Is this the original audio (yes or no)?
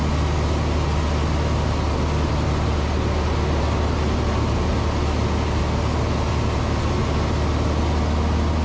yes